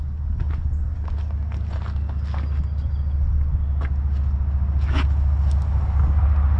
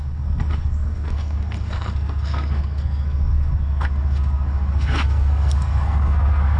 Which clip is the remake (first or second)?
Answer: second